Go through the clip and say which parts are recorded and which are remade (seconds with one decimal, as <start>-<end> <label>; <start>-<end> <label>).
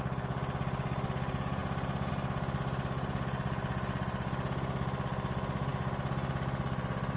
0.0-7.2 recorded